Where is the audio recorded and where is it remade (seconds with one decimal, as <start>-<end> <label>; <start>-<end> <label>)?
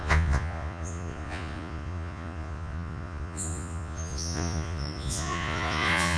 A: 0.0-6.2 remade